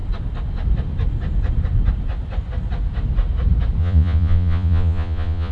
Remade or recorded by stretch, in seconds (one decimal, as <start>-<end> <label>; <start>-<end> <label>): 0.0-3.8 recorded; 3.8-5.5 remade